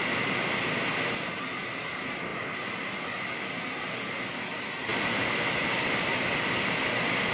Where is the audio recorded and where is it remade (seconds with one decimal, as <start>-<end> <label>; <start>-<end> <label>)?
0.0-7.3 recorded